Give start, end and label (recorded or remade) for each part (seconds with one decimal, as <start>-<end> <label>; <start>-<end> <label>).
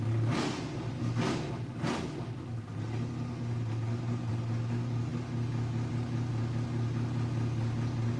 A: 0.0-8.2 recorded